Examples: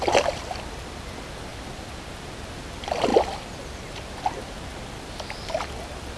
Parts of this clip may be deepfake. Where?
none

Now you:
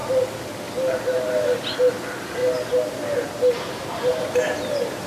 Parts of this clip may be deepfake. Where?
none

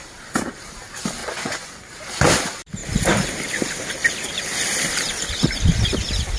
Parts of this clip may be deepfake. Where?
1.2-1.7 (vocoder, Vocos)

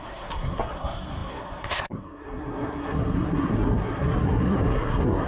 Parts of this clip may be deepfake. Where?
0.0-5.3 (codec, SNAC)

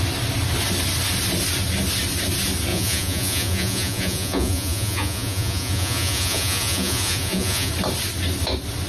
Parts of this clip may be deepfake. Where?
2.7-7.7 (vocoder, Vocos)

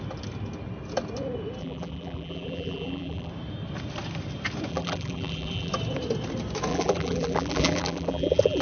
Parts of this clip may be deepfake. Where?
1.6-3.3 (vocoder, BigVGAN v2); 4.7-5.7; 6.7-8.6